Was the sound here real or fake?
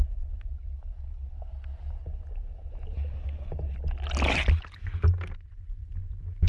real